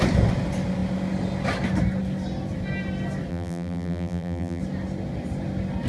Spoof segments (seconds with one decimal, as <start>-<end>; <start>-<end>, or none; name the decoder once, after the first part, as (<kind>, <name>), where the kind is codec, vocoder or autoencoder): 3.3-4.6 (vocoder, BigVGAN v2)